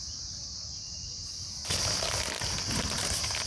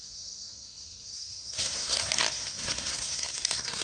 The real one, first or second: first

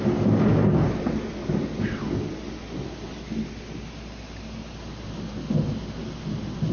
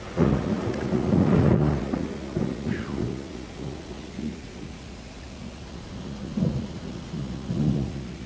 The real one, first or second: first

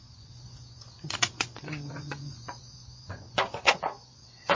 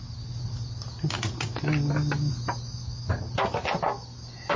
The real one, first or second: second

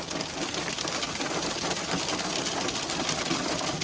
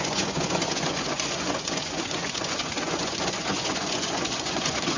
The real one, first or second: first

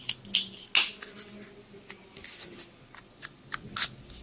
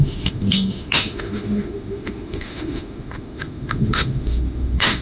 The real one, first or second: first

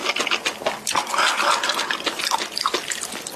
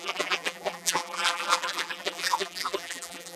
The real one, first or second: first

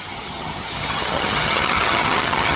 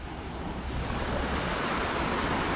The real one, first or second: second